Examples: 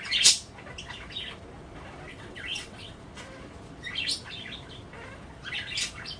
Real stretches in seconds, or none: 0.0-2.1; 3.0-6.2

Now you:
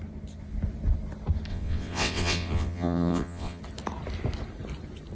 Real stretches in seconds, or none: 0.0-1.5; 3.6-5.2

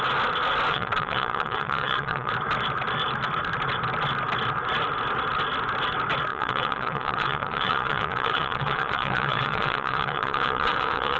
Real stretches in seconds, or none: 0.0-0.7; 2.3-6.3

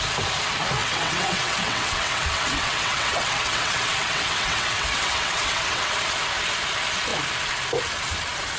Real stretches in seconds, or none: 0.0-0.8; 5.9-8.6